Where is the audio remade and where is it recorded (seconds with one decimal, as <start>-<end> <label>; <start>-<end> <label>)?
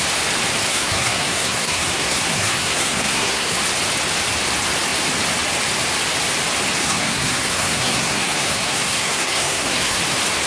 0.0-0.7 recorded; 0.7-3.6 remade; 3.6-6.8 recorded; 6.8-10.0 remade; 10.0-10.5 recorded